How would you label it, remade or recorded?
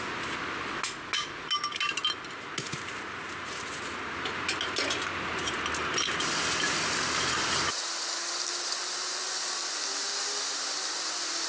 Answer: recorded